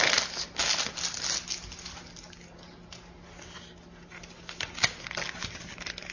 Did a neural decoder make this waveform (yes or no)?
no